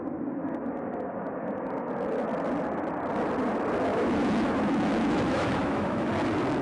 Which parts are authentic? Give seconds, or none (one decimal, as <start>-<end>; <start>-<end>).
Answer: 0.0-3.9; 6.1-6.6